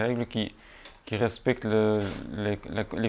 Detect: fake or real real